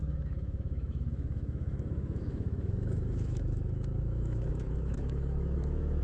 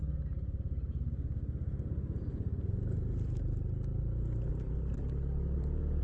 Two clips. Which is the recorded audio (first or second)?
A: second